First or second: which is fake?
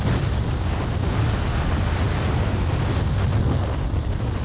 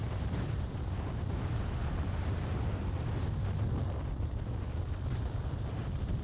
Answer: second